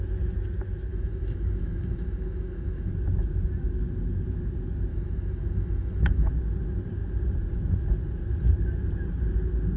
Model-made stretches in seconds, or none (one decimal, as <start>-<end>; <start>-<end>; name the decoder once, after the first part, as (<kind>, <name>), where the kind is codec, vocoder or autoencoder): 0.9-2.9 (autoencoder, DAC-VAE); 4.9-6.3